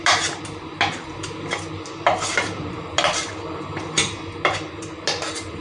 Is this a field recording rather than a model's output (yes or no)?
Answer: yes